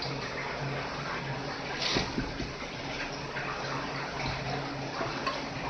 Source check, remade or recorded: recorded